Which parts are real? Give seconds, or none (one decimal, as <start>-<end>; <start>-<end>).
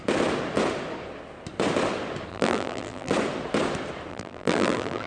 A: 0.0-2.3; 3.1-4.1